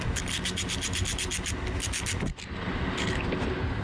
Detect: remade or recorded recorded